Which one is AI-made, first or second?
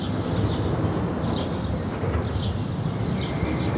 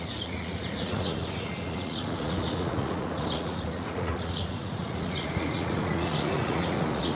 second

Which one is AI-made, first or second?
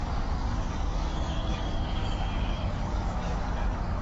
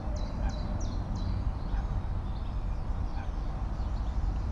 first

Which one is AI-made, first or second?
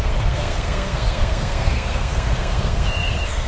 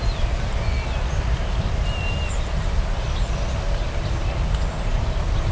first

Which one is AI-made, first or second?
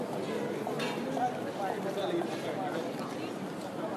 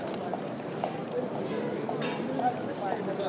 second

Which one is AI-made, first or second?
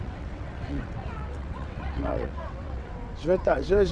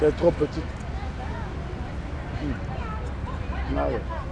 first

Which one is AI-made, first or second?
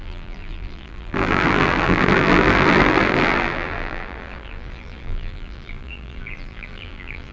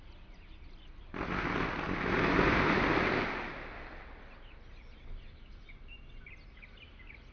first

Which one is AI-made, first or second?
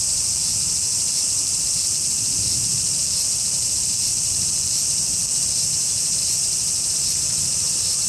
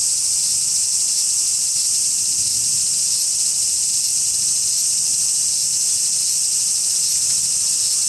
first